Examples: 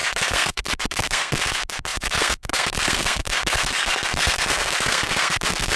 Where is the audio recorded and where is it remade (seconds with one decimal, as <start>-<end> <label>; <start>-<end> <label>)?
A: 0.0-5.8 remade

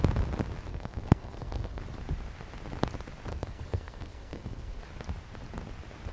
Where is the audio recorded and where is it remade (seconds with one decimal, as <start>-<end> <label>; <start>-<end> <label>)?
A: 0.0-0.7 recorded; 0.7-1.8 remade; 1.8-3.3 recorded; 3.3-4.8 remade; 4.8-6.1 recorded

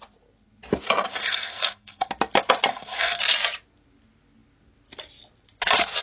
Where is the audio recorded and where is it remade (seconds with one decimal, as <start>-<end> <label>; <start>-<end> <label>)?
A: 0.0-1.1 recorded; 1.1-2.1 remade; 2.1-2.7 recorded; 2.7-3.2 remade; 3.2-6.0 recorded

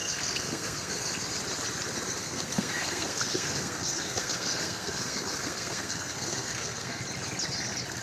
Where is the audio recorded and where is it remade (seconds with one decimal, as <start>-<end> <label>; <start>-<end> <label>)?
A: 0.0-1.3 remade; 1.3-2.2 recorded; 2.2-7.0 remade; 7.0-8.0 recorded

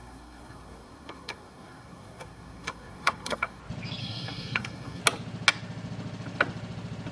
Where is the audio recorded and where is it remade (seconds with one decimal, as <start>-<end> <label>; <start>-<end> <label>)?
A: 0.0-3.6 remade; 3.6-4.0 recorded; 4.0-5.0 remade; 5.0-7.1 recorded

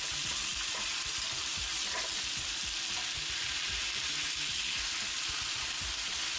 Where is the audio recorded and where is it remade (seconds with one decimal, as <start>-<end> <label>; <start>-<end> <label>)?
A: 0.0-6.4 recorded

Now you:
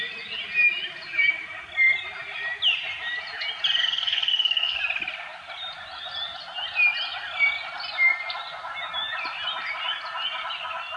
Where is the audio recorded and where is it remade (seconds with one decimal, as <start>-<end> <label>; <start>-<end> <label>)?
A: 0.0-3.8 recorded; 3.8-4.8 remade; 4.8-11.0 recorded

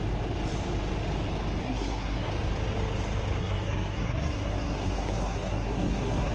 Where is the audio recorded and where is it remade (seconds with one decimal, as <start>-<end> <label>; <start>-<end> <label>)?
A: 0.0-1.6 recorded; 1.6-2.3 remade; 2.3-3.4 recorded; 3.4-6.3 remade